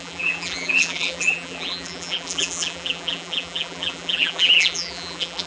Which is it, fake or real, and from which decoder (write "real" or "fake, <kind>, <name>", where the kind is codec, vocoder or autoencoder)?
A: fake, vocoder, BigVGAN v2